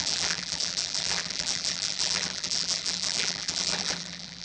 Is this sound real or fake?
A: fake